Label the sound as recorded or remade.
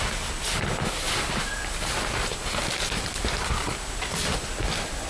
recorded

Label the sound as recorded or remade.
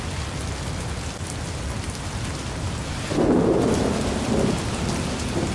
recorded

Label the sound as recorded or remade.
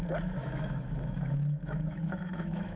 remade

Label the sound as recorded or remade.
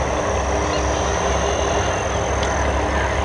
recorded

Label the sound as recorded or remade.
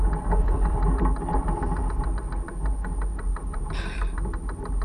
remade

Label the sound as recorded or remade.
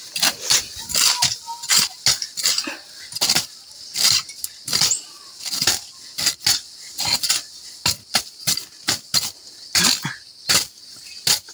recorded